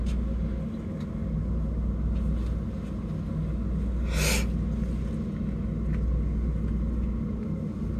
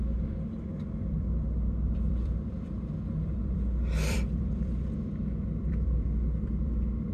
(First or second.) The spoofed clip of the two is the second